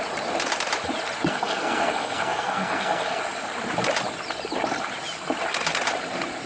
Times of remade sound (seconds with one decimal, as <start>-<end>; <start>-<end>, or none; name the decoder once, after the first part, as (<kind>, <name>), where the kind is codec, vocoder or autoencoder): 1.3-3.2 (codec, SNAC)